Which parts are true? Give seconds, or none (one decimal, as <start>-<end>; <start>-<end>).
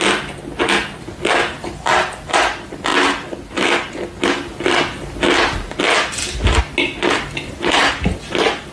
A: 0.0-8.7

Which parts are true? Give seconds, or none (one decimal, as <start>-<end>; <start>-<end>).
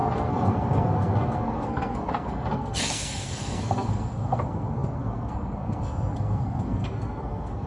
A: none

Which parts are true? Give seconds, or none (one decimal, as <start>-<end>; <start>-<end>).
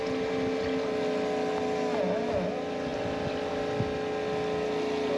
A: 0.0-5.2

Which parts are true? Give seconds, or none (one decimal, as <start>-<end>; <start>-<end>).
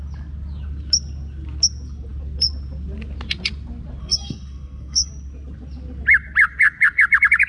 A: 0.0-4.0; 5.1-7.5